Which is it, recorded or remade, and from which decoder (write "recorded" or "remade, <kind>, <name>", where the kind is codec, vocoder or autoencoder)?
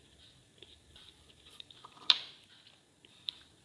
remade, vocoder, BigVGAN v2